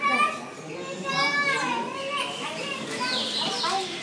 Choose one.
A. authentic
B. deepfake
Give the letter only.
A